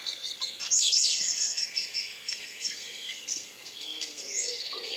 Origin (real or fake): fake